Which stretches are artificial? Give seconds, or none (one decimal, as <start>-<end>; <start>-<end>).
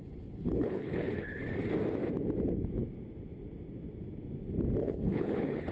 0.0-1.4; 4.8-5.7